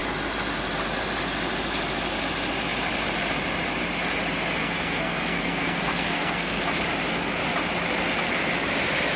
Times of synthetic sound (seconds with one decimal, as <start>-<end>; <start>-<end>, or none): 4.6-6.6